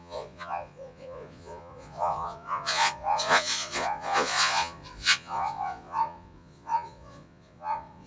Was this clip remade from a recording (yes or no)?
yes